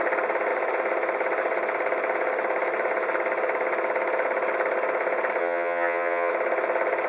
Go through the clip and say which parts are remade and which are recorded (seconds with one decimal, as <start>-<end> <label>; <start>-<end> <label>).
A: 0.0-5.4 recorded; 5.4-6.3 remade; 6.3-7.1 recorded